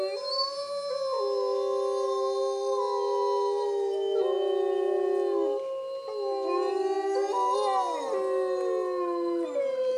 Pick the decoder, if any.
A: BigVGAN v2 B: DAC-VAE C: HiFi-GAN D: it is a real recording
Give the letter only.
D